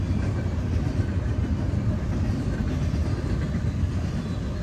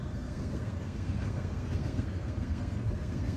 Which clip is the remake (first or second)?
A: second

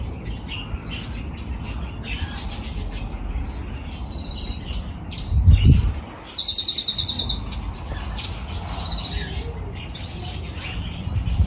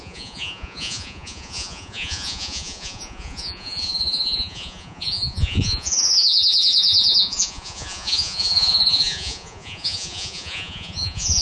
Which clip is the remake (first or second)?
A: second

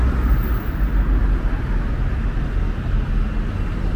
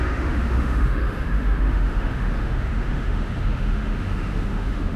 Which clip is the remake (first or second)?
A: second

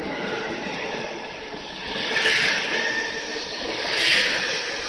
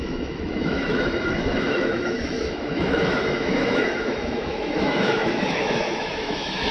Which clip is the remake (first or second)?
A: second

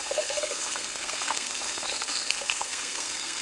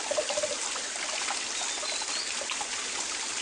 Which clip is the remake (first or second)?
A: first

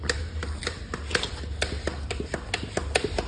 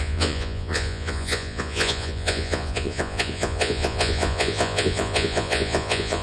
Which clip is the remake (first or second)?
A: second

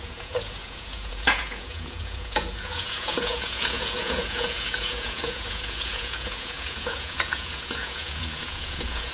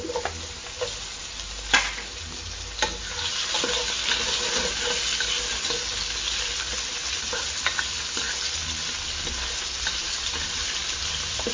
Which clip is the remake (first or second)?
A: first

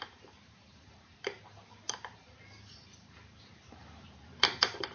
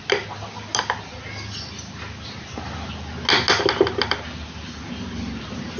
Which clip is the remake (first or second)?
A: first